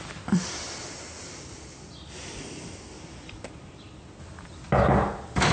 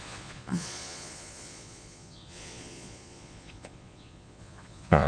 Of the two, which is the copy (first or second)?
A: second